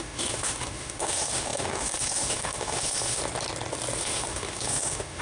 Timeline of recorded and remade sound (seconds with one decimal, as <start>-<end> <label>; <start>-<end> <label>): 0.0-3.2 remade; 3.2-4.0 recorded; 4.0-5.2 remade